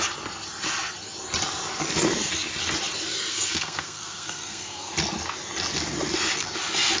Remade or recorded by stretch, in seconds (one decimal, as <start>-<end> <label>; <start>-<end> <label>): 0.0-3.3 recorded; 3.3-4.9 remade; 4.9-7.0 recorded